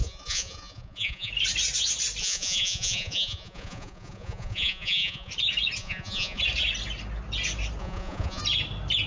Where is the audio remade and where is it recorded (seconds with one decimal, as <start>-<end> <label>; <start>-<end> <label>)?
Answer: 0.0-1.3 remade; 1.3-2.2 recorded; 2.2-5.3 remade; 5.3-5.8 recorded; 5.8-6.4 remade; 6.4-7.8 recorded; 7.8-8.4 remade; 8.4-9.1 recorded